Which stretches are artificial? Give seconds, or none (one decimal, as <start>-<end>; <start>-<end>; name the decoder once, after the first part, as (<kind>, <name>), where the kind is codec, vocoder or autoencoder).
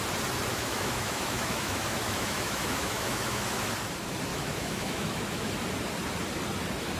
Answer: 0.5-3.7 (autoencoder, DAC-VAE); 4.3-5.5